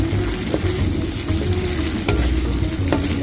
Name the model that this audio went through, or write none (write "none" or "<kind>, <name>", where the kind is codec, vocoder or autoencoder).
none